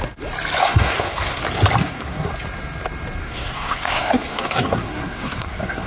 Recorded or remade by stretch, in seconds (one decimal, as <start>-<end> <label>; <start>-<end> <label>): 0.0-0.6 recorded; 0.6-1.4 remade; 1.4-1.8 recorded; 1.8-2.3 remade; 2.3-3.2 recorded; 3.2-5.9 remade